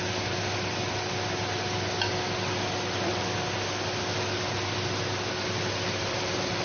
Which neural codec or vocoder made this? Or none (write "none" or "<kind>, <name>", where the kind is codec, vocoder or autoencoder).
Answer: none